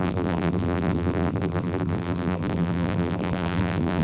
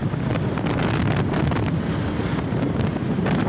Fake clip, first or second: first